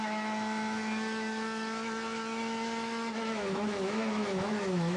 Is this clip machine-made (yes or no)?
yes